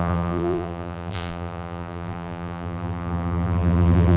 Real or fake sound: fake